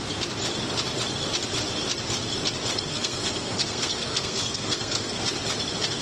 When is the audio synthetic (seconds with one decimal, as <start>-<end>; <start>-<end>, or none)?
2.9-5.2